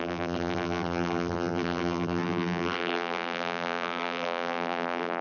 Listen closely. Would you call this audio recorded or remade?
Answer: remade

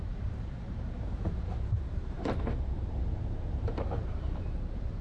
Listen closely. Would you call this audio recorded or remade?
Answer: remade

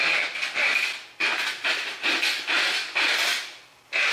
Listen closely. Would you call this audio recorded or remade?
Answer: recorded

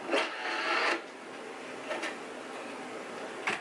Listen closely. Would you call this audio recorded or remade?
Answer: recorded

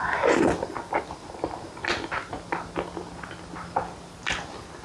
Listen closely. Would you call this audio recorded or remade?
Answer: recorded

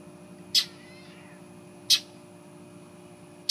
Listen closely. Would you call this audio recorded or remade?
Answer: recorded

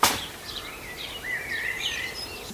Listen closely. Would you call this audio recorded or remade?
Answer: remade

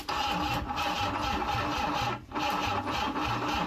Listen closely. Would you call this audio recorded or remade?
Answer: recorded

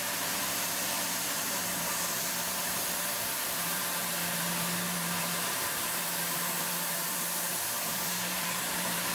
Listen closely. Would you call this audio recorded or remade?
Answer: remade